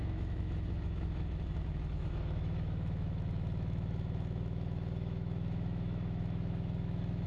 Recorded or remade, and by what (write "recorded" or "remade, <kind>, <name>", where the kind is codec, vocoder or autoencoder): remade, autoencoder, DAC-VAE